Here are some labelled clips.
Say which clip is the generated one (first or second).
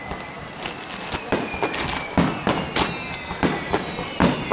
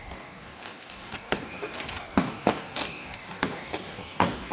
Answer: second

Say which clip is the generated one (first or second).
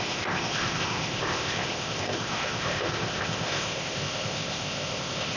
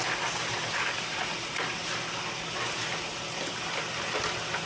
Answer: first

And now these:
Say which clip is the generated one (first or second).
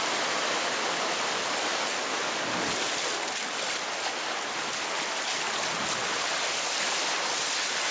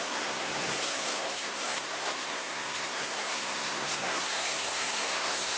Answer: second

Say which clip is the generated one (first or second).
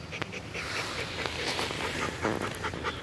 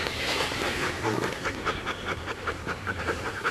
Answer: second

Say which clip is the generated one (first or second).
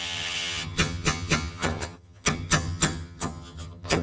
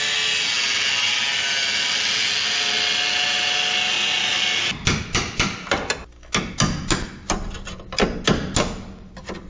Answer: first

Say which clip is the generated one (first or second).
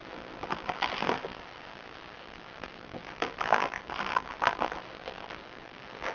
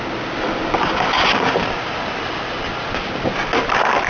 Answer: first